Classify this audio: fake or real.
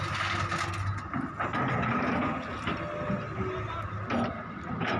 real